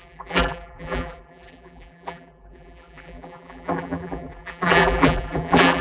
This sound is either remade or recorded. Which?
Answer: remade